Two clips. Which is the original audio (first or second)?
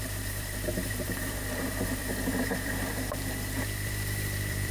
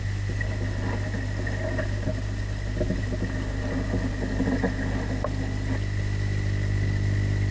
second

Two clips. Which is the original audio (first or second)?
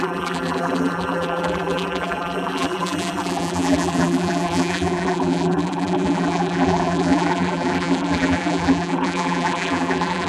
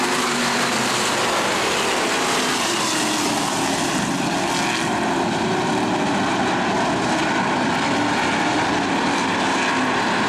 second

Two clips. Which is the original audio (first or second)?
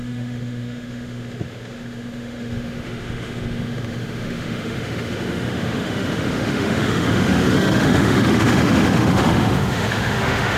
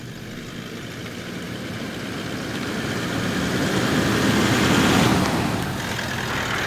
second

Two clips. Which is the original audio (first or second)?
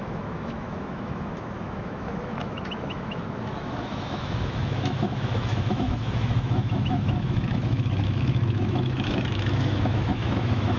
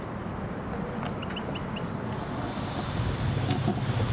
second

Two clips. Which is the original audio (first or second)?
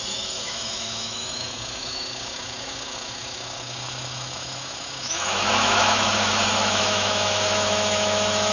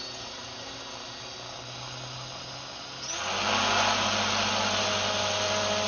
second